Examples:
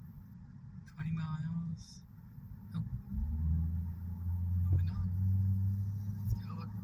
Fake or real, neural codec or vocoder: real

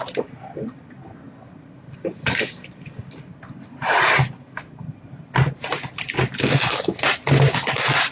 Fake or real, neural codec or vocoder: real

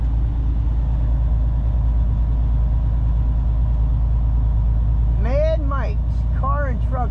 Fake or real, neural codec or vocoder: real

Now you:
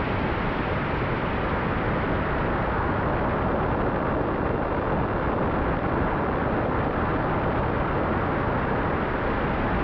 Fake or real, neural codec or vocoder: real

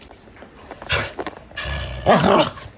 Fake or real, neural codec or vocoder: real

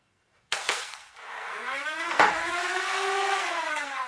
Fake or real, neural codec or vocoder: fake, codec, SNAC